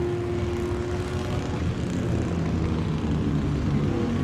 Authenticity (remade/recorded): recorded